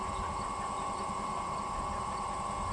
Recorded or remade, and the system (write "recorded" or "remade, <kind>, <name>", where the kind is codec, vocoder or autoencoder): recorded